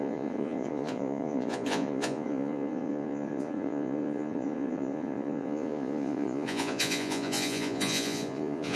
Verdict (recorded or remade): remade